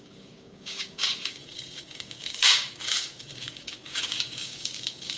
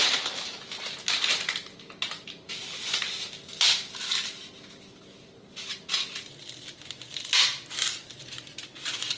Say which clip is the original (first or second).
second